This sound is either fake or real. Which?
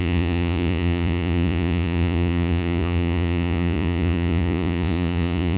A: fake